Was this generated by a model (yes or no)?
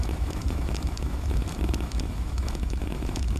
yes